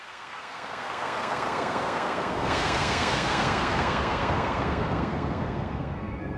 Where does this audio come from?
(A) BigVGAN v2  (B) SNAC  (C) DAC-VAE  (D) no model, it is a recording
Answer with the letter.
B